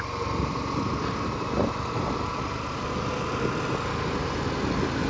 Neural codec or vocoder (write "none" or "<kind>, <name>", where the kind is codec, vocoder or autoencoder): none